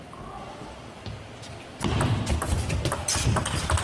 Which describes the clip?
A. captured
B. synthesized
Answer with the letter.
A